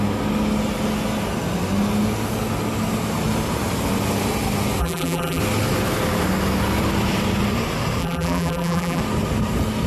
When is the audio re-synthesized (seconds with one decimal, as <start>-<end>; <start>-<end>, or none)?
4.8-5.4; 8.0-9.0